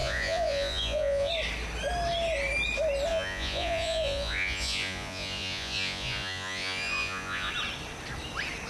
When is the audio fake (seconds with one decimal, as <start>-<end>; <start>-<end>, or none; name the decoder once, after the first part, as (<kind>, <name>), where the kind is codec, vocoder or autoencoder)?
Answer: 0.0-1.3 (vocoder, Vocos); 3.1-7.5

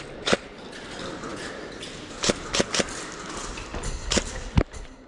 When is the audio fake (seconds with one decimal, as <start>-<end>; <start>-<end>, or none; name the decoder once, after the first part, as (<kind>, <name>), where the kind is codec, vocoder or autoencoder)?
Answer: none

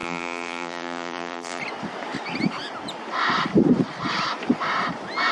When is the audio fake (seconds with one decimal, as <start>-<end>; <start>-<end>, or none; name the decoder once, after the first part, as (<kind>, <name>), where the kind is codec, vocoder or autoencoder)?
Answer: 0.0-1.6 (vocoder, BigVGAN v2)

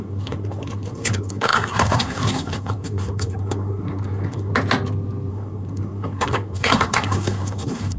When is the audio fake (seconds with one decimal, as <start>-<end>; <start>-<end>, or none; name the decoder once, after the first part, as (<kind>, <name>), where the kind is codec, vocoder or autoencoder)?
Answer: 0.0-4.5 (codec, SNAC); 5.3-8.0